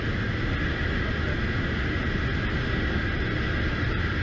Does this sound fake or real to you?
real